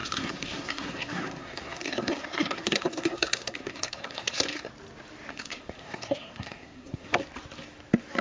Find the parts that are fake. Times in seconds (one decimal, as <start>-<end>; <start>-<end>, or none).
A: 0.0-4.7; 5.3-7.2